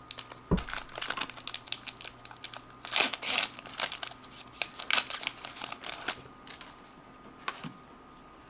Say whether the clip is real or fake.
real